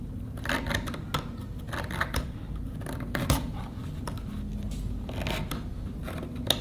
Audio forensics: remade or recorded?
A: recorded